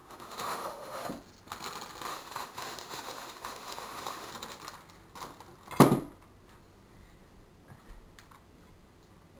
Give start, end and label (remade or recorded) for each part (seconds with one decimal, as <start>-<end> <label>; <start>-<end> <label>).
0.0-1.1 remade; 1.1-2.1 recorded; 2.1-4.3 remade; 4.3-9.4 recorded